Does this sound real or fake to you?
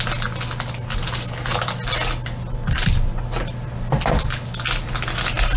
real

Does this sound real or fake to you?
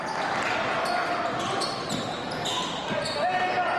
real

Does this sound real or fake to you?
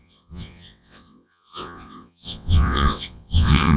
fake